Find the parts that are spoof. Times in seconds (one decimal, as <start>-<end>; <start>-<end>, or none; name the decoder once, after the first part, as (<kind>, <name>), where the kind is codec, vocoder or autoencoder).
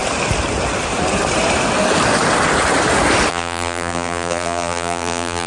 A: 3.3-5.5 (vocoder, BigVGAN v2)